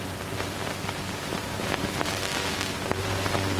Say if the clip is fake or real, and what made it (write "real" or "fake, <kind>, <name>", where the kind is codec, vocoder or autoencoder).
fake, vocoder, BigVGAN v2